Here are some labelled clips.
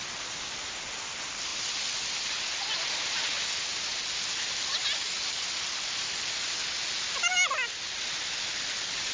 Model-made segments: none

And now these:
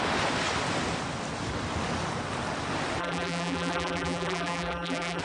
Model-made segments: 3.0-5.2 (vocoder, BigVGAN v2)

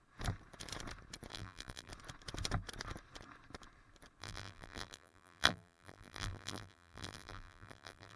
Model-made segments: 1.3-1.9 (vocoder, BigVGAN v2); 4.2-8.2

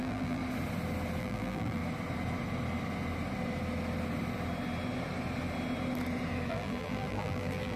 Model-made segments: 0.0-0.4 (vocoder, BigVGAN v2); 1.2-1.8; 6.5-7.8

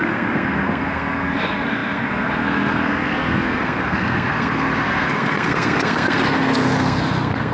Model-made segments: 0.0-7.5 (codec, SNAC)